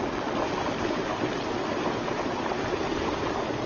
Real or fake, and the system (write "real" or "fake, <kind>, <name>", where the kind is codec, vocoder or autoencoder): real